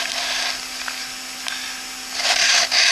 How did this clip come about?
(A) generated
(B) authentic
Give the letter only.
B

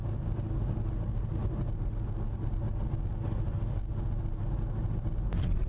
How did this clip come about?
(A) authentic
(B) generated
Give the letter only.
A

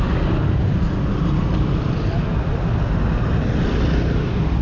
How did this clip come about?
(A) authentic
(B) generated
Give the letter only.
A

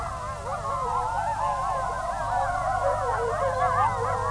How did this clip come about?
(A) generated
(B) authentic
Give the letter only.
B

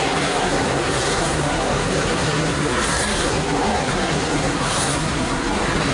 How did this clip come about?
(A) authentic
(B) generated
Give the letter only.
B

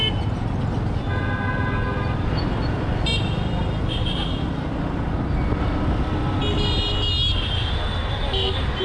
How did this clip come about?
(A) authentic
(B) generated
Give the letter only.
A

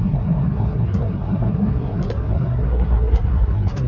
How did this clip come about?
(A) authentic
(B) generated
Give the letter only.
B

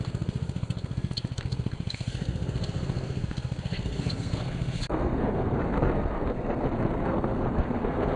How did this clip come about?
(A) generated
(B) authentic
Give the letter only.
A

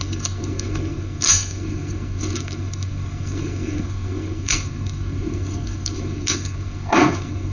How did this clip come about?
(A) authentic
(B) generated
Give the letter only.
B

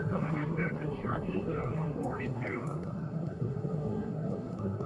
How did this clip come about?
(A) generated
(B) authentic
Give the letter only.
A